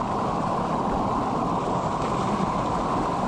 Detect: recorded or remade recorded